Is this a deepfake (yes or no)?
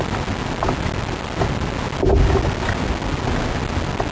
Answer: no